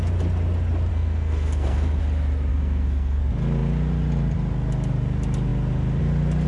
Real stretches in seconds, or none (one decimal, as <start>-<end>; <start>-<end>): 0.0-0.9; 2.0-2.5; 3.2-6.5